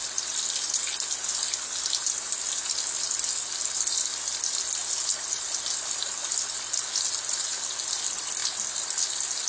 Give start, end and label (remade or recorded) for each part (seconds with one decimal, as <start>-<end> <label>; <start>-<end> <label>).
0.0-9.5 recorded